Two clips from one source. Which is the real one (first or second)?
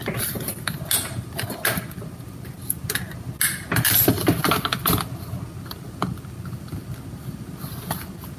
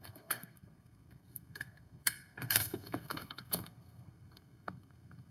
first